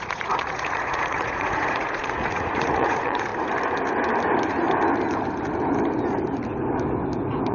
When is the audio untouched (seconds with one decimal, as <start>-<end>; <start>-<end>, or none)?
3.3-7.5